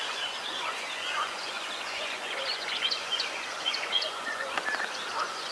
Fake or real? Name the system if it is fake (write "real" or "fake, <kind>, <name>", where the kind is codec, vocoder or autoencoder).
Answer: fake, vocoder, Vocos